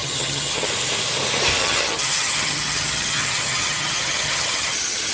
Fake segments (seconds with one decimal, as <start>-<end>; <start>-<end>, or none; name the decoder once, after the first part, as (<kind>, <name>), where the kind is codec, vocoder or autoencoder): 0.0-0.7 (vocoder, HiFi-GAN); 1.6-5.1